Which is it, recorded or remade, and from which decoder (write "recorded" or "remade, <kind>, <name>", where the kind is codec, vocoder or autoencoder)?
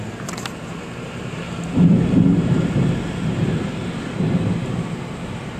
remade, vocoder, BigVGAN v2